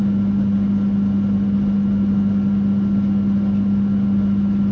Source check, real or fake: real